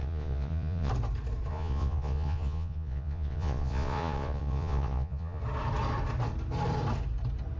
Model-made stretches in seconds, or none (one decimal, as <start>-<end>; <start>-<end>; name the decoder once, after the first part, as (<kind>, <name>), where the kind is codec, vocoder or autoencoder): 0.0-0.9 (vocoder, Vocos); 1.5-5.4